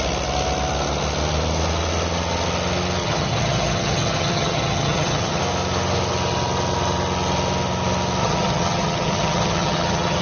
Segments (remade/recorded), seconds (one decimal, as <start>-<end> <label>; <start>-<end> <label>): 0.0-3.0 recorded; 3.0-5.4 remade; 5.4-8.2 recorded; 8.2-10.2 remade